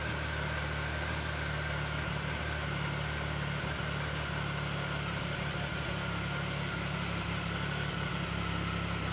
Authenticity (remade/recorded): recorded